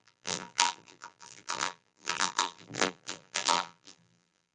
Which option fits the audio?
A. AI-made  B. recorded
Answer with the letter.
A